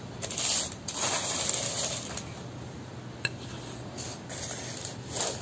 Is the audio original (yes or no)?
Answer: yes